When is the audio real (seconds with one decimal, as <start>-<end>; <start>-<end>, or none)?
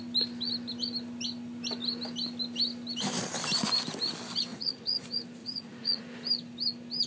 0.0-4.5; 5.0-5.4; 6.0-7.1